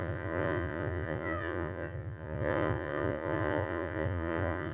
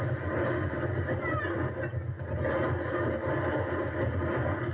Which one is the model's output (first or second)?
first